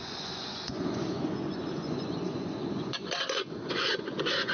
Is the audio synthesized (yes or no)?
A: yes